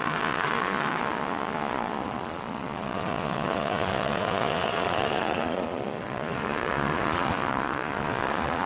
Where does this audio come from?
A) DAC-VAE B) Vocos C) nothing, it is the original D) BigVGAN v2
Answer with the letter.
B